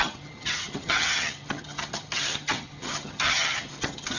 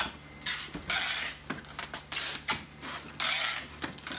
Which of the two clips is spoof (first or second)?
first